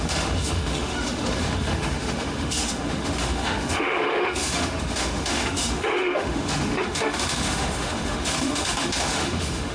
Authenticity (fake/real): fake